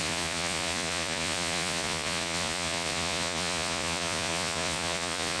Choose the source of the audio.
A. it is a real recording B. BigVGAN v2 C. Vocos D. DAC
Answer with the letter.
C